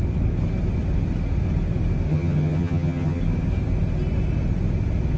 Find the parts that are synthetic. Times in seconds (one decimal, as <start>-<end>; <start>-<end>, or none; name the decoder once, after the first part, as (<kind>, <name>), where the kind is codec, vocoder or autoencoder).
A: 2.1-3.2 (vocoder, HiFi-GAN)